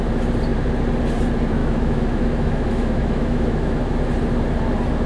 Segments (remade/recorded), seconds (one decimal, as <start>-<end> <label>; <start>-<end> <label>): 0.0-1.6 recorded; 1.6-3.8 remade; 3.8-5.1 recorded